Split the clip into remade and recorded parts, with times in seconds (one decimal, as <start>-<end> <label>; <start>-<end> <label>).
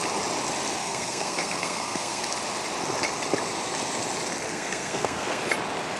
0.0-0.8 recorded; 0.8-2.2 remade; 2.2-4.5 recorded; 4.5-5.4 remade; 5.4-6.0 recorded